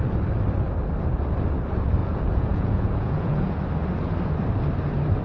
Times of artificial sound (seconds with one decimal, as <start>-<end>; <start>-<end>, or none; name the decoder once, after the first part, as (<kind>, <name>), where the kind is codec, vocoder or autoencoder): 2.0-3.5 (vocoder, Vocos)